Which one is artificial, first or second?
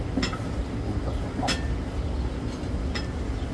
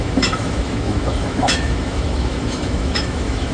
second